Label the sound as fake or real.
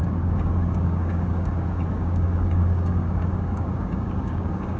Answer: fake